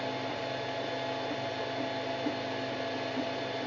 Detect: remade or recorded recorded